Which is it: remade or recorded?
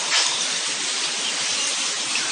remade